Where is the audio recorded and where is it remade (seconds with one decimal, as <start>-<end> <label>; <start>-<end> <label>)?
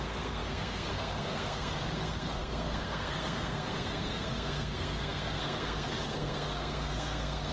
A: 0.0-7.5 remade